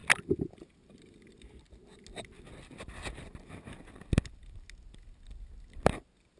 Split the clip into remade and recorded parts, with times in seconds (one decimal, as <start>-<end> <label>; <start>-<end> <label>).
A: 0.0-6.4 recorded